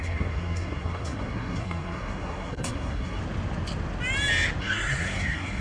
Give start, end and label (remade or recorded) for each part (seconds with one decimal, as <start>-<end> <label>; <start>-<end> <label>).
0.0-3.2 remade; 3.2-4.6 recorded; 4.6-5.6 remade